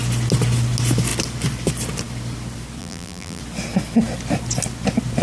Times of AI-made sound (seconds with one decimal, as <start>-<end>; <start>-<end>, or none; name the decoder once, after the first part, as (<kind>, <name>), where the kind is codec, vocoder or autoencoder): 2.8-3.4 (vocoder, BigVGAN v2)